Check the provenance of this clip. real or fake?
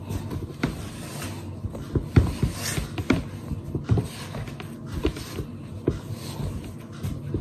real